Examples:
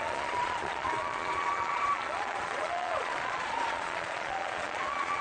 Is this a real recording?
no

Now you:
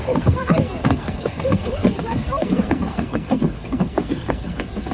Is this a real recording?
no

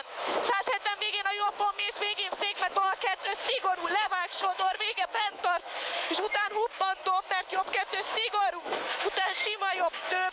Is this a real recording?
no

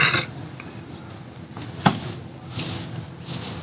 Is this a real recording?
yes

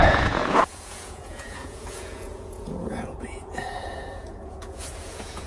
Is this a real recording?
no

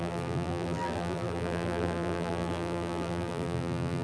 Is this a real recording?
no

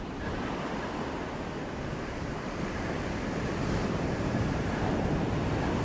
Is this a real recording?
yes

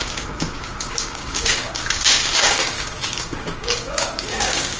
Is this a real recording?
no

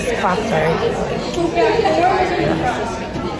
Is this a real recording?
yes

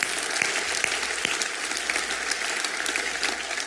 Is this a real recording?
yes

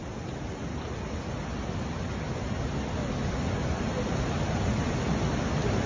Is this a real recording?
yes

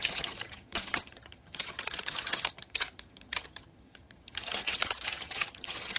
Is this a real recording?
no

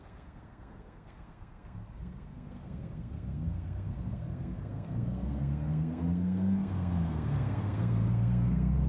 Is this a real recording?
no